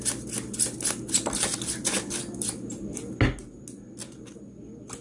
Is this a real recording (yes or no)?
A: yes